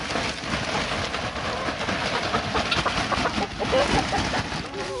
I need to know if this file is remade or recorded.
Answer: recorded